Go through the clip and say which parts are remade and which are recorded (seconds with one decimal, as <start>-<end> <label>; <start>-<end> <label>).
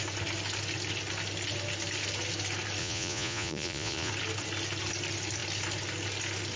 0.0-2.8 recorded; 2.8-4.1 remade; 4.1-6.6 recorded